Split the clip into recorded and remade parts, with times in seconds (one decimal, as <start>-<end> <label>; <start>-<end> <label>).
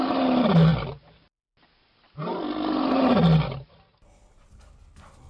0.0-5.3 recorded